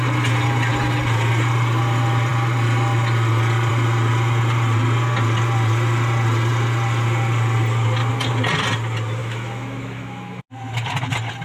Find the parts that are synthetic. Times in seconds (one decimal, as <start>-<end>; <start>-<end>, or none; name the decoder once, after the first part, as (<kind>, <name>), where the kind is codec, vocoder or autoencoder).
9.2-10.4 (autoencoder, DAC-VAE)